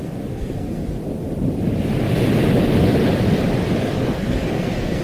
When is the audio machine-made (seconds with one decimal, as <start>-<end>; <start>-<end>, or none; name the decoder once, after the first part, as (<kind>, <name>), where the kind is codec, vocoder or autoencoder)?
0.0-0.8 (codec, SNAC); 3.8-5.0